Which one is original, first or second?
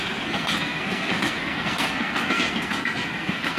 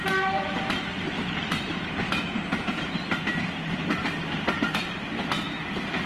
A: second